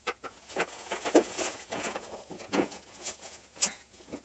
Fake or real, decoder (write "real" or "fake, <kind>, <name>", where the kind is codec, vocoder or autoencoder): fake, vocoder, Vocos